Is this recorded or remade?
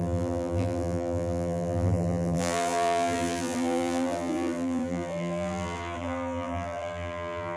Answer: remade